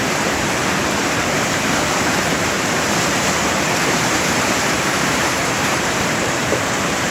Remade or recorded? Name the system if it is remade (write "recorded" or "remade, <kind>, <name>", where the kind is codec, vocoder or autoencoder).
remade, vocoder, BigVGAN v2